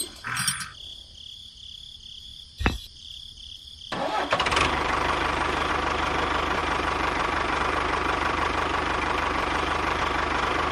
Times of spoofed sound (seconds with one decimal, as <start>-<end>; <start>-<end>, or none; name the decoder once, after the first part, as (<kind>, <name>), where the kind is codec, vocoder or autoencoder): 2.3-5.7 (vocoder, BigVGAN v2); 6.6-10.0